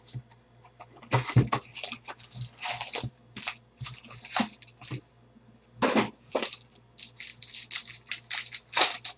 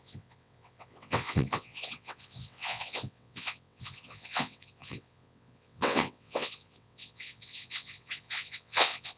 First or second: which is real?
first